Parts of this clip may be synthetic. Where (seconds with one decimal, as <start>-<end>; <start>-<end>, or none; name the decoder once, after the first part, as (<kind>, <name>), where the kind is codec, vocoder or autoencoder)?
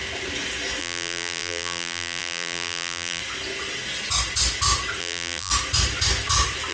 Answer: 0.8-3.2 (vocoder, BigVGAN v2); 5.0-5.5